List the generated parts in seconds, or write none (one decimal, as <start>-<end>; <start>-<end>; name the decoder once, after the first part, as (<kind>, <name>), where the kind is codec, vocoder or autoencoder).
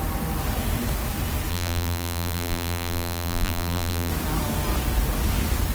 1.5-4.1 (vocoder, BigVGAN v2)